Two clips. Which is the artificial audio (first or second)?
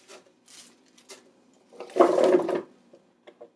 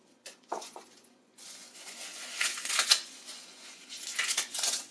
second